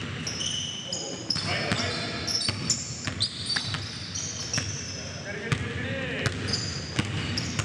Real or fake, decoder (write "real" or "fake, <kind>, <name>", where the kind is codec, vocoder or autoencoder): real